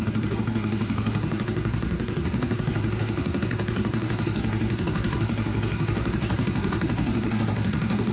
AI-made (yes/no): yes